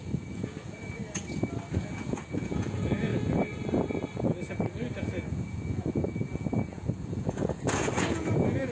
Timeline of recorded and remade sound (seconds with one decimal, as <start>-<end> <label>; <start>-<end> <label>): 0.0-1.0 remade; 1.0-1.8 recorded; 1.8-8.7 remade